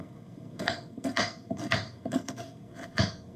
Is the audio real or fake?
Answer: fake